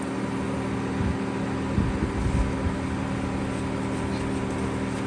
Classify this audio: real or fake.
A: real